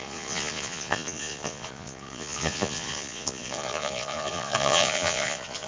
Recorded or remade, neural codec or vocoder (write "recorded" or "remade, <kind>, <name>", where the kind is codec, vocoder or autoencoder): remade, vocoder, Vocos